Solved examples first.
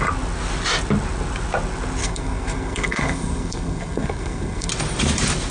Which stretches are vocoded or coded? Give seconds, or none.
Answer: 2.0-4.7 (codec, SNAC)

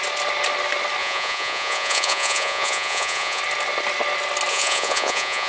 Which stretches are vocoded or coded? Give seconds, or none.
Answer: 1.0-3.4 (vocoder, Vocos); 4.5-5.5

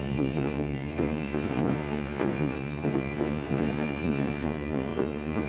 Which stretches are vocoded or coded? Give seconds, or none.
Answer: 0.0-5.5 (vocoder, Vocos)